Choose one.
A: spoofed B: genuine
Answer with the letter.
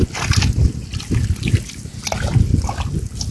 B